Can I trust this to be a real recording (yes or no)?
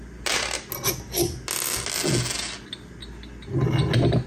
yes